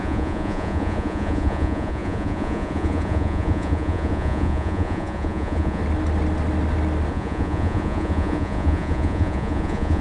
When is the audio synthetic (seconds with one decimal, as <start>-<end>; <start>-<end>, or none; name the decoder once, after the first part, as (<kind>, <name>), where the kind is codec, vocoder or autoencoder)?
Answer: 0.0-5.8 (vocoder, Vocos); 7.1-10.0